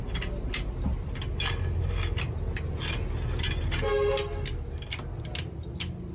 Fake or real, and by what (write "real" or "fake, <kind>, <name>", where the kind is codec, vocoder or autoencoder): real